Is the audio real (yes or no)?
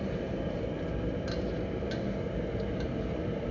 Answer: yes